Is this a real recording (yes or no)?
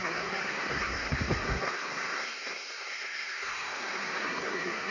no